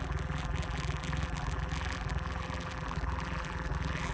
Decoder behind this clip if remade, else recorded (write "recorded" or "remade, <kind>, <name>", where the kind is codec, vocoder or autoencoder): remade, vocoder, BigVGAN v2